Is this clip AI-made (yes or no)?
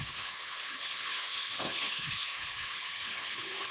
yes